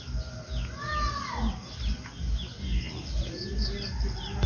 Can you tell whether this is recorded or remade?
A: recorded